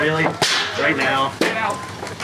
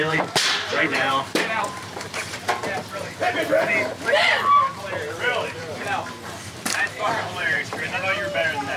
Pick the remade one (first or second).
second